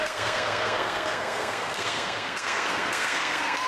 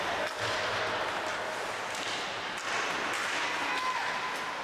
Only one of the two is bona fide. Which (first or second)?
second